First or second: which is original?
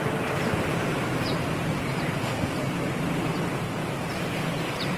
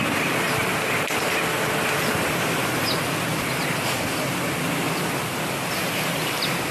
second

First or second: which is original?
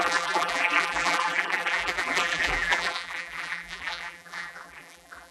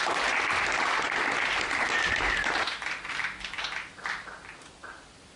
second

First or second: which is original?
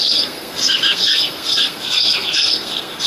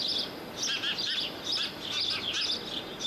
second